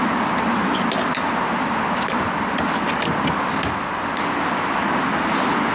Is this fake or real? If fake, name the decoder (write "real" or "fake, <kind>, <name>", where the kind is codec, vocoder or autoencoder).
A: real